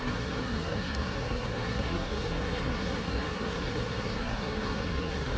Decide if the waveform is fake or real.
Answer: fake